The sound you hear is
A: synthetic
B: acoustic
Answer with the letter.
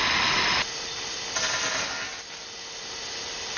B